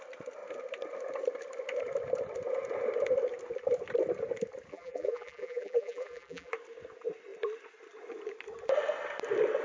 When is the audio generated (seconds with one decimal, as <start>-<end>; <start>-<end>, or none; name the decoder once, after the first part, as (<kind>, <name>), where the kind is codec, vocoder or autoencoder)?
4.7-6.5 (vocoder, BigVGAN v2)